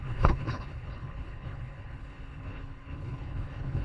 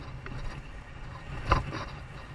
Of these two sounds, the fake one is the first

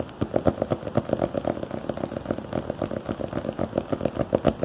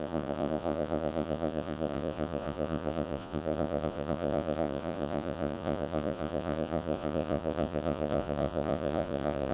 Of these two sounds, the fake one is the second